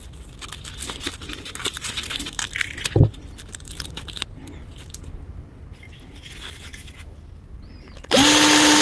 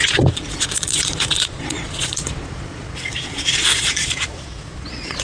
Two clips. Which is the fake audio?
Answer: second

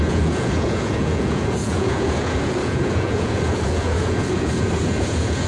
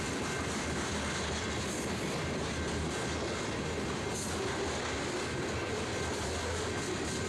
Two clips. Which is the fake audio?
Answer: first